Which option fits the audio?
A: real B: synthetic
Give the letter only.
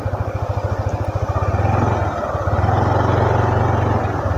A